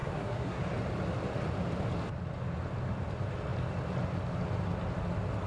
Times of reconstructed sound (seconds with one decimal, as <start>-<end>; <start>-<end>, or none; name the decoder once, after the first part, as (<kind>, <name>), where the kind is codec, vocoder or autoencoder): 0.0-0.6 (codec, SNAC)